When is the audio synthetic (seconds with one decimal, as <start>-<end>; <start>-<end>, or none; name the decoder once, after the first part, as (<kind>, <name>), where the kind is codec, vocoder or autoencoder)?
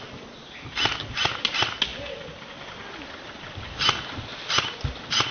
none